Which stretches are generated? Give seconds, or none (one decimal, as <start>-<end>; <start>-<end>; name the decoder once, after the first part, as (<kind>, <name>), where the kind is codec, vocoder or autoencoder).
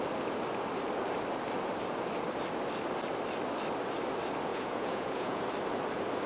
4.5-5.4 (vocoder, Vocos)